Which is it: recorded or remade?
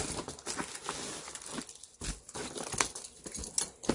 recorded